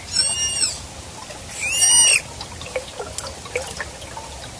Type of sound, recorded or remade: recorded